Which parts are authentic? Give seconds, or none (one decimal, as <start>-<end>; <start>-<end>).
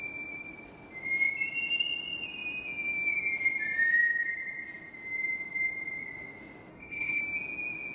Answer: 0.0-6.7; 7.2-7.9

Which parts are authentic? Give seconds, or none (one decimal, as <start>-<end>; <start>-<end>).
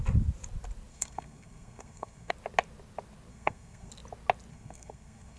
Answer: 0.0-0.9; 2.3-3.3; 3.9-4.5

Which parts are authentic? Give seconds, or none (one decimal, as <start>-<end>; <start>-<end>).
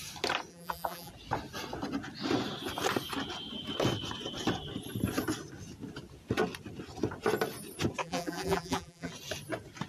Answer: 0.0-0.5; 1.1-8.0; 9.1-9.9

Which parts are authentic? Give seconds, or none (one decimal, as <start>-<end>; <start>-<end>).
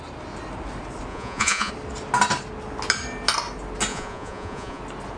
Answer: 0.0-1.1; 1.7-3.9; 4.8-5.2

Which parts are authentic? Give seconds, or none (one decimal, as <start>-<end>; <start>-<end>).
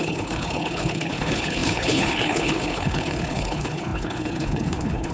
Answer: none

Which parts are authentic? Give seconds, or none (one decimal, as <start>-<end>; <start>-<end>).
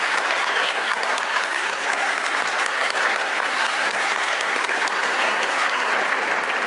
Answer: 5.9-6.7